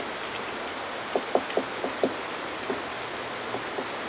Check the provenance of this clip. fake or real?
real